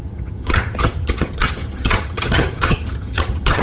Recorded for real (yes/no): no